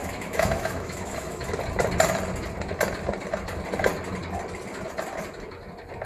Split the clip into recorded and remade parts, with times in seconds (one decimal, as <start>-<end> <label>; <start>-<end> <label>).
0.0-1.5 remade; 1.5-6.1 recorded